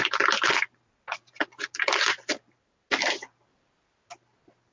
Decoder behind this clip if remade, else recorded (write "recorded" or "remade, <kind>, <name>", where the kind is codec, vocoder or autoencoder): recorded